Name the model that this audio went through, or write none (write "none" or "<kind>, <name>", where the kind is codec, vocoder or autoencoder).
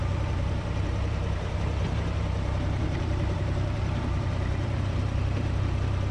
vocoder, BigVGAN v2